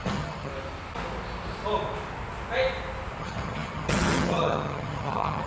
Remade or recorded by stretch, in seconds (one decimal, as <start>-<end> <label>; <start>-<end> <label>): 0.0-0.5 remade; 0.5-3.2 recorded; 3.2-5.5 remade